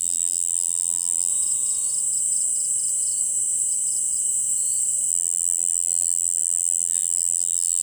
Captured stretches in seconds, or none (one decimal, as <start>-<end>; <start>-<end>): 1.3-5.1